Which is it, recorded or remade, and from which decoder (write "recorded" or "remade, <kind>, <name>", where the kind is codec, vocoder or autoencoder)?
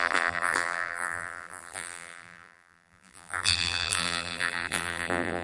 remade, vocoder, BigVGAN v2